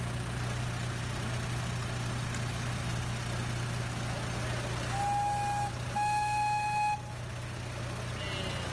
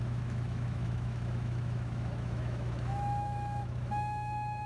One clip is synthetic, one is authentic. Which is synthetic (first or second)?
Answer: second